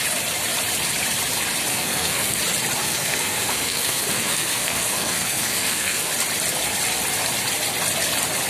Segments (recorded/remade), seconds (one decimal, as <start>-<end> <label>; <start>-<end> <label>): 0.0-1.7 recorded; 1.7-2.4 remade; 2.4-2.8 recorded; 2.8-6.1 remade; 6.1-8.5 recorded